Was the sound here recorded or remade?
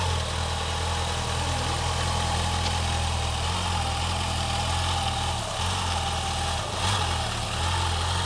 recorded